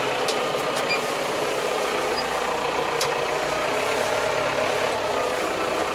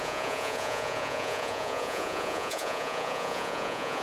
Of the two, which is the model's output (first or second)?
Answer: second